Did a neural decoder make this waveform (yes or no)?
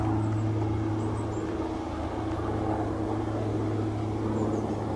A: no